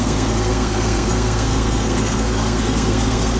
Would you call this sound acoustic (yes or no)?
no